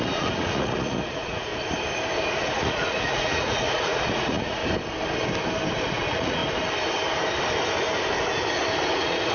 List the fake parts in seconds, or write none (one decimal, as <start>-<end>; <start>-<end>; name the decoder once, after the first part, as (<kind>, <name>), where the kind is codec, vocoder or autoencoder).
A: 0.0-1.5 (vocoder, Vocos); 2.4-4.6; 5.8-6.4; 8.9-9.3